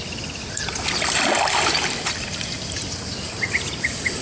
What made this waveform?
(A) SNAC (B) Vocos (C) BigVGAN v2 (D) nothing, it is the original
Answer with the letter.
C